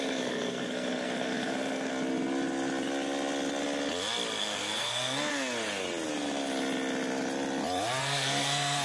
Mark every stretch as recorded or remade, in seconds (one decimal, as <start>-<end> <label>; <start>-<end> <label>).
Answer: 0.0-1.9 remade; 1.9-4.4 recorded; 4.4-5.3 remade; 5.3-8.0 recorded; 8.0-8.8 remade